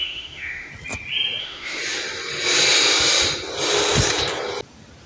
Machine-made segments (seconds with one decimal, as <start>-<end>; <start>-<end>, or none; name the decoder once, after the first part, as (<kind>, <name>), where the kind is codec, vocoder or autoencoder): 0.0-0.7 (autoencoder, DAC-VAE); 1.4-1.8